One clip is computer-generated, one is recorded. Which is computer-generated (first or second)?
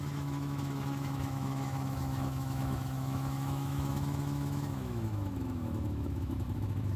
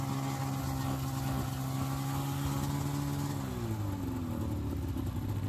first